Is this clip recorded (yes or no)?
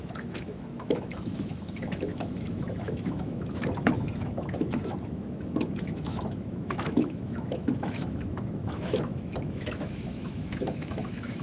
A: no